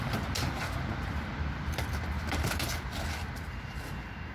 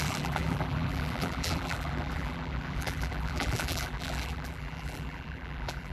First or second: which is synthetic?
second